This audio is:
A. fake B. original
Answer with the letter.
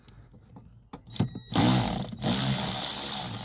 B